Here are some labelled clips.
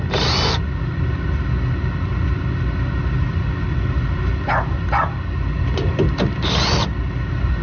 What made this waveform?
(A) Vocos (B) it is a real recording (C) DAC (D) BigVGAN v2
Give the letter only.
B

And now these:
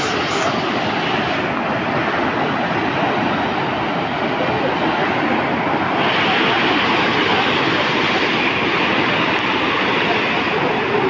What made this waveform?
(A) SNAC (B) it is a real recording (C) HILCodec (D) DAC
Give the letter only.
B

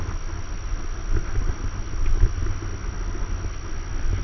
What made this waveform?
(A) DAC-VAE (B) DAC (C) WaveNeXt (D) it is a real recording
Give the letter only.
D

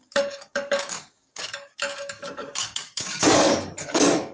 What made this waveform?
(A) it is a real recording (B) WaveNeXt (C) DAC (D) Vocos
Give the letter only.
C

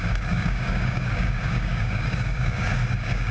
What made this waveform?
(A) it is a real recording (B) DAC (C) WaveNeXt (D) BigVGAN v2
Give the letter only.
B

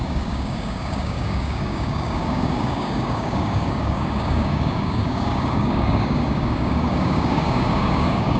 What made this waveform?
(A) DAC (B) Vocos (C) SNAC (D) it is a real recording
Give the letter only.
A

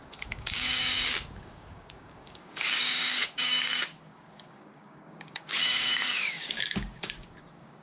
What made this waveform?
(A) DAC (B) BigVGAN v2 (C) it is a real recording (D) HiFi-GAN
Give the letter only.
A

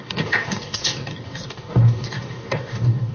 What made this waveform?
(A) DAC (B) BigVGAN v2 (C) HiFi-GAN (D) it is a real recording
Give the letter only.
A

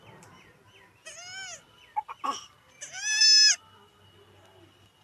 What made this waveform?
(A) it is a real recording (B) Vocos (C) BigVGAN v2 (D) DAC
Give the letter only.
A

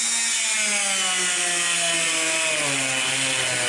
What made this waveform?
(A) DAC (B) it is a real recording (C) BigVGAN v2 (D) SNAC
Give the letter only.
B